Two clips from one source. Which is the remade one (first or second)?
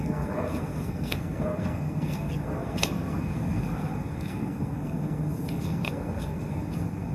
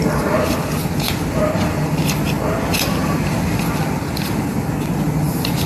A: first